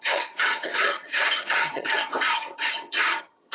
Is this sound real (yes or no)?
no